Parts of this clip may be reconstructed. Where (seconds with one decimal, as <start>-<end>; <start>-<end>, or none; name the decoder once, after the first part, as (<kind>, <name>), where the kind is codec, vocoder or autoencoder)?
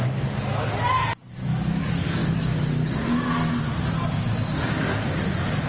none